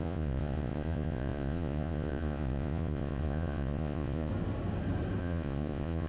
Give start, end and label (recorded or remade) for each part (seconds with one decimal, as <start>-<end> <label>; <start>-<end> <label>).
0.0-4.3 remade; 4.3-5.2 recorded; 5.2-6.1 remade